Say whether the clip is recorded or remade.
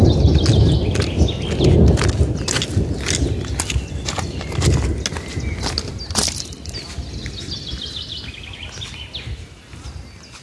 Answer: recorded